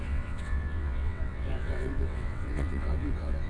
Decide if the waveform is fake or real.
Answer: fake